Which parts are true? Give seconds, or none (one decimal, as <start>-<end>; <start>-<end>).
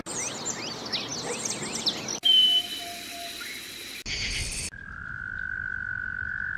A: 0.0-6.6